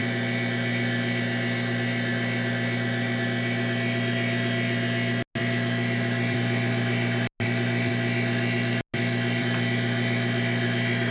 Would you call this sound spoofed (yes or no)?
no